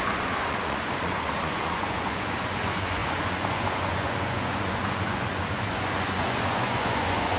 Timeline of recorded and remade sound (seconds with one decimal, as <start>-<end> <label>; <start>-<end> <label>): 0.0-7.4 remade